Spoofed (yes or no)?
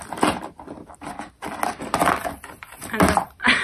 no